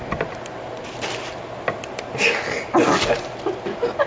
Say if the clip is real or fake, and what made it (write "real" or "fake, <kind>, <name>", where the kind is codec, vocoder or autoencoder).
real